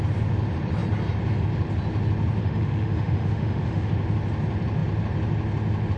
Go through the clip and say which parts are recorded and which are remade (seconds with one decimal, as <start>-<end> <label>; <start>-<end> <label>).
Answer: 0.0-2.4 recorded; 2.4-3.9 remade; 3.9-6.0 recorded